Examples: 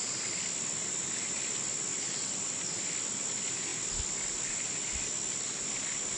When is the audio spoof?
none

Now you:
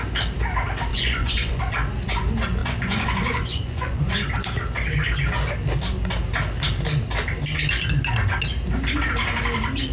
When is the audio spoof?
0.9-1.6 (vocoder, Vocos); 2.6-4.1